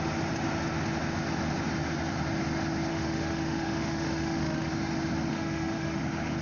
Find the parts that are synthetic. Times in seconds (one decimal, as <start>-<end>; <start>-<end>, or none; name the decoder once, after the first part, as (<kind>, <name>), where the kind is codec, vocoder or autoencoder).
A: 2.9-4.7 (autoencoder, DAC-VAE); 5.3-6.0